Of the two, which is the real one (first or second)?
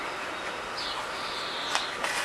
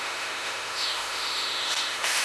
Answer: first